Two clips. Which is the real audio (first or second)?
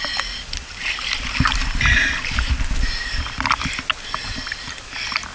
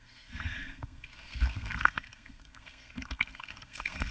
first